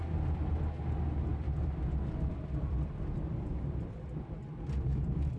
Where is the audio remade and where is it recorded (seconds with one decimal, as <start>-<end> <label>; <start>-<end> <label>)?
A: 0.0-1.3 recorded; 1.3-4.5 remade; 4.5-5.4 recorded